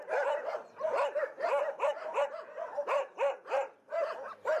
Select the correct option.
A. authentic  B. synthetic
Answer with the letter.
A